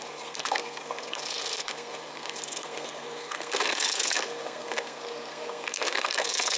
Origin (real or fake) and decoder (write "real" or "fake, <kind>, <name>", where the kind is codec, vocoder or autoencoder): fake, codec, SNAC